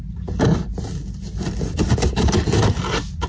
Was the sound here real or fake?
real